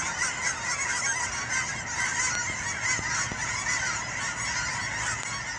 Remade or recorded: recorded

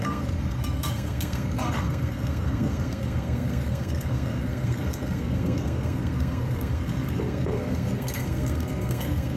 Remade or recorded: remade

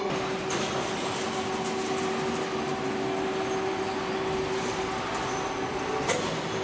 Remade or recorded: recorded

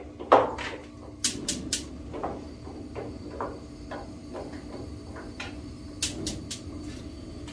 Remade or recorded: recorded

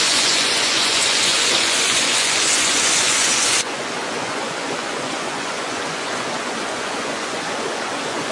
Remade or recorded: remade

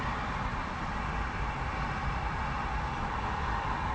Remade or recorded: recorded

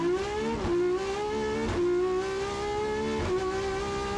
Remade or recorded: recorded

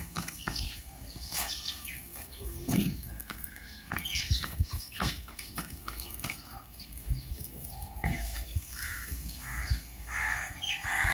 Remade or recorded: remade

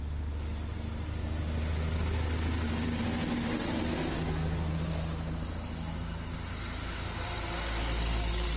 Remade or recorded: recorded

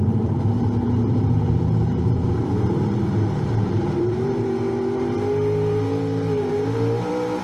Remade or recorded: remade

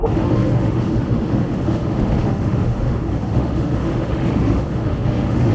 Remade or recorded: remade